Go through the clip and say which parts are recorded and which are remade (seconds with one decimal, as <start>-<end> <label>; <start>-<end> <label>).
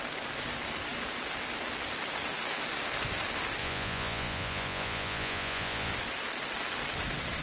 0.0-3.6 recorded; 3.6-5.9 remade; 5.9-7.4 recorded